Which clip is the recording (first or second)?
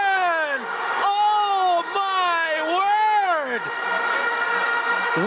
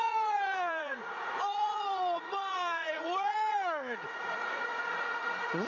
first